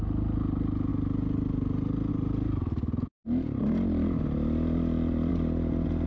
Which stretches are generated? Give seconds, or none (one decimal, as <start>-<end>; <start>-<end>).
none